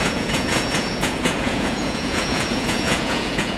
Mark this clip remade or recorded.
remade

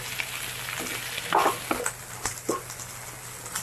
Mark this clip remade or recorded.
recorded